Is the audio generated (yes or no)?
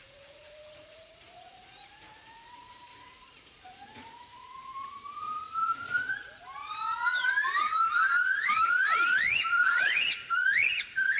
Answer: yes